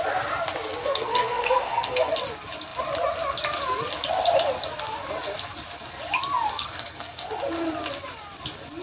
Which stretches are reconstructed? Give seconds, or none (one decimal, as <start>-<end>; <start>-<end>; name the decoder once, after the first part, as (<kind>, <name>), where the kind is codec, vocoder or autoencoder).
0.8-2.1 (codec, SNAC); 6.5-7.3